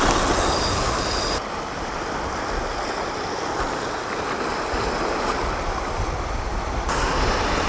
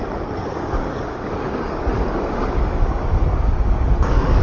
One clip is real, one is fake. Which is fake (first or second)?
second